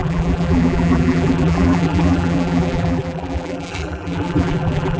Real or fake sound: fake